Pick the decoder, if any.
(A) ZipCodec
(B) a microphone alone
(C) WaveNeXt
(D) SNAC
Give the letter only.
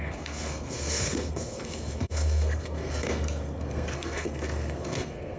D